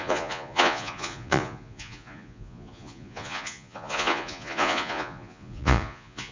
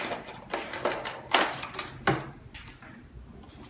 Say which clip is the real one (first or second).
second